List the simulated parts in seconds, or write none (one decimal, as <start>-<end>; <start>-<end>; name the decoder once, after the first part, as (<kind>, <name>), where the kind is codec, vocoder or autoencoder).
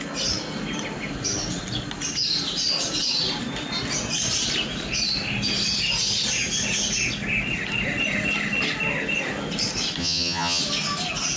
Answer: 10.0-10.6 (vocoder, HiFi-GAN)